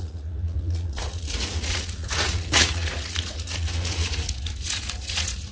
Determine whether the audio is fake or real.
fake